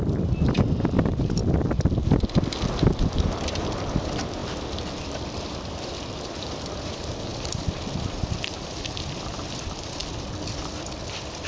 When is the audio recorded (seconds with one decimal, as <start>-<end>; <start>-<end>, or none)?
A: 1.4-3.2; 4.4-5.1; 10.0-10.6